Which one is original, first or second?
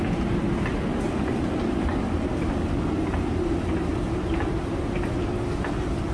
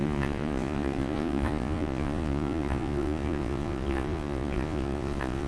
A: first